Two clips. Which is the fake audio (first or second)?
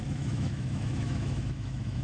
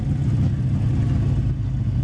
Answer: first